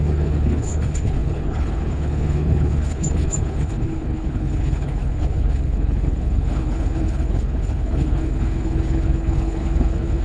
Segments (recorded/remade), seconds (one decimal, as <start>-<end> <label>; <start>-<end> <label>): 0.0-10.2 remade